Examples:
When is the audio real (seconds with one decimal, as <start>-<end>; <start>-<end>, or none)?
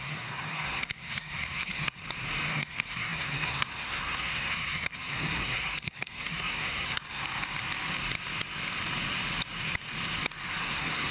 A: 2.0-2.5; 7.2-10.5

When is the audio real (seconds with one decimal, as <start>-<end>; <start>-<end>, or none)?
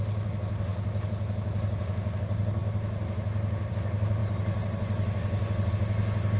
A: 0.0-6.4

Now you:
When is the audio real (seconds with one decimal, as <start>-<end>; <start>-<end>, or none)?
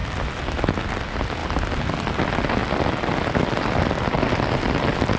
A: 0.0-5.2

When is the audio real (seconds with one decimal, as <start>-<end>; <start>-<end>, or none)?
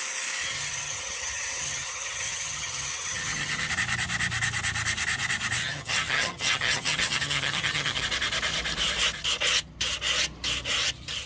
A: 0.0-0.4; 3.7-5.6; 8.0-11.3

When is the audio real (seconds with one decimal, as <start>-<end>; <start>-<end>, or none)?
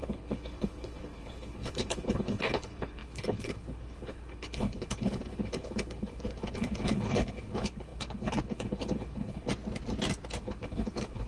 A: 9.5-10.4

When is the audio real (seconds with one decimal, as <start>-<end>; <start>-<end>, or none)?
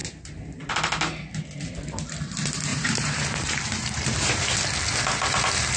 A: 0.7-2.7; 4.4-5.8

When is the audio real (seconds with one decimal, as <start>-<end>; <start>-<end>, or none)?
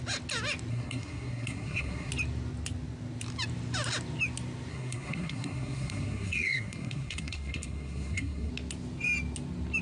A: 0.0-0.7; 2.1-4.7; 8.5-9.8